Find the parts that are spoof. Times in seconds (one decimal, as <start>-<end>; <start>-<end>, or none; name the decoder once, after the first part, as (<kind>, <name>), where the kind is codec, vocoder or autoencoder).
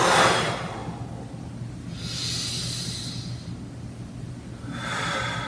none